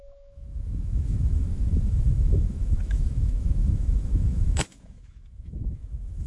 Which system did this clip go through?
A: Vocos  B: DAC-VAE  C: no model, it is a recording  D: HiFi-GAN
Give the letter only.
B